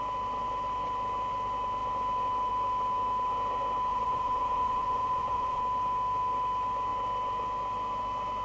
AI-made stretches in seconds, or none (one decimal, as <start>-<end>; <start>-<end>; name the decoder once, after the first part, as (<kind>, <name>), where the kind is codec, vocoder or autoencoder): 3.9-5.6 (vocoder, Vocos)